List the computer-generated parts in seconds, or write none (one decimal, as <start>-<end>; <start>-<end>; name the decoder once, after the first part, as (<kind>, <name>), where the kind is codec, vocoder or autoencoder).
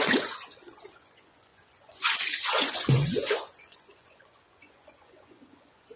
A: 0.0-6.0 (vocoder, Vocos)